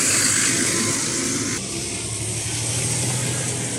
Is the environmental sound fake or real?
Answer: real